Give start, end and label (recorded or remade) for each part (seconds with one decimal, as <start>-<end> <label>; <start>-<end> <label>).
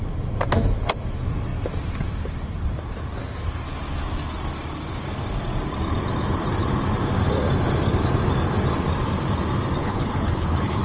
0.0-9.8 recorded; 9.8-10.8 remade